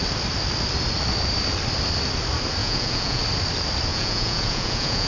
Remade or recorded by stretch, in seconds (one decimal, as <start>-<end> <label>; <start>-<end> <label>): 0.0-2.6 recorded; 2.6-3.2 remade; 3.2-3.9 recorded; 3.9-5.1 remade

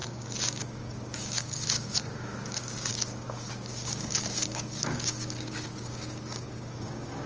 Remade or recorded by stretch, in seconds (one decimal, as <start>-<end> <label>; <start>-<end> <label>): 0.0-7.3 remade

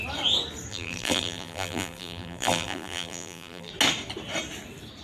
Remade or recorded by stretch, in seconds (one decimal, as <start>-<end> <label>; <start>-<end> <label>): 0.0-0.7 recorded; 0.7-3.7 remade; 3.7-5.0 recorded

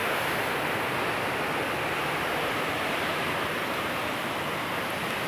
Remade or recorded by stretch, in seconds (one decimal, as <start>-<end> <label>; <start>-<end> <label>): 0.0-5.3 recorded